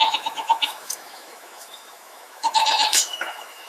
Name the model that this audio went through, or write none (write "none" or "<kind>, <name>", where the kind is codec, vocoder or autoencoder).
autoencoder, DAC-VAE